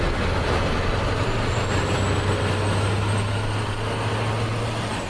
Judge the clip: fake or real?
real